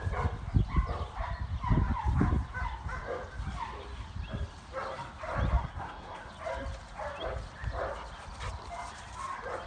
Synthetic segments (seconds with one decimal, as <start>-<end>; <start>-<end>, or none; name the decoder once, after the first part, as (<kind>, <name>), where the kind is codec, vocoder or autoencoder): 5.6-6.3 (codec, SNAC)